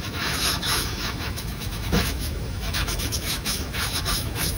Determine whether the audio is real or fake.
fake